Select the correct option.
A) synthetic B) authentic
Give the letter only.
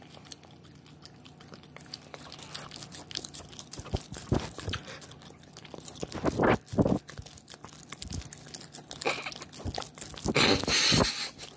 B